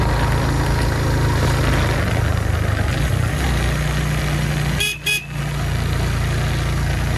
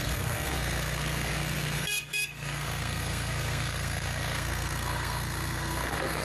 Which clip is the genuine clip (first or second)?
first